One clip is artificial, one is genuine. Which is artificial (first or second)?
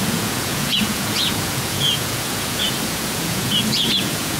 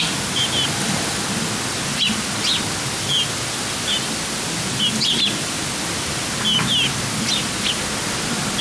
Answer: first